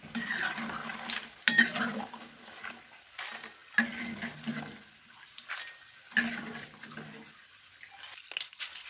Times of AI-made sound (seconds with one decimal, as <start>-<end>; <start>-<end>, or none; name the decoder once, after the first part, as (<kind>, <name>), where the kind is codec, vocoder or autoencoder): none